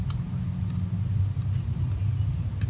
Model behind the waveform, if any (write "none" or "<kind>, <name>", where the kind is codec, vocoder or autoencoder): none